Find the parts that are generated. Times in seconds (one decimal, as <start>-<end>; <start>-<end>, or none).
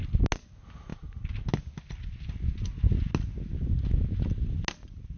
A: none